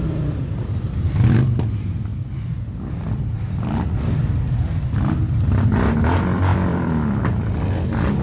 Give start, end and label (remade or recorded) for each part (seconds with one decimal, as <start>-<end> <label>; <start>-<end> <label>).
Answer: 0.0-6.5 recorded; 6.5-7.2 remade; 7.2-8.2 recorded